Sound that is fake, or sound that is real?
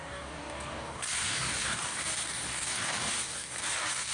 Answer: fake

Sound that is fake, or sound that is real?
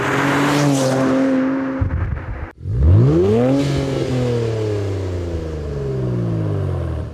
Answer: real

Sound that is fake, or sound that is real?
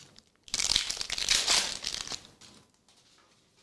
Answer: real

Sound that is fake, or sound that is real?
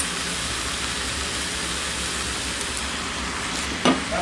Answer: real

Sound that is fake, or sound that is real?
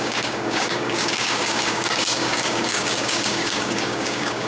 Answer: fake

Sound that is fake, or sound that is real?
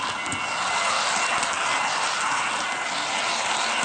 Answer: real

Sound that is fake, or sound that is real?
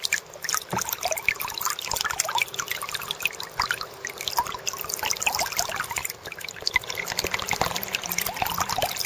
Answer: real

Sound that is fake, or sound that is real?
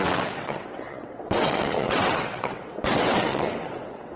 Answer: fake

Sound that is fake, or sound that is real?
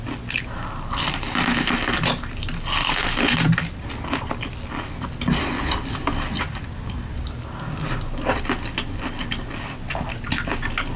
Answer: real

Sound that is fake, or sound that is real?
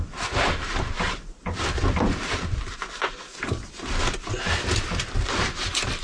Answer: real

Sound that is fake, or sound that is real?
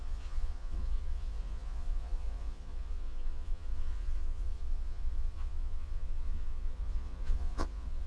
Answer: fake